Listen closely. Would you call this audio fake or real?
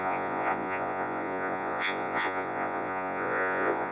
fake